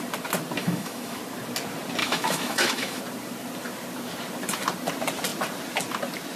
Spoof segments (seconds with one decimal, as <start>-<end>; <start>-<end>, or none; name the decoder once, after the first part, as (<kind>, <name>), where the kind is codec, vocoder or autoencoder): 0.6-1.2 (autoencoder, DAC-VAE); 2.0-3.0